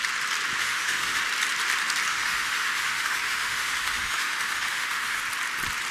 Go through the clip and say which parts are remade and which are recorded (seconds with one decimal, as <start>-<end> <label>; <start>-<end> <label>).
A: 0.0-0.6 recorded; 0.6-1.2 remade; 1.2-2.1 recorded; 2.1-5.2 remade; 5.2-5.9 recorded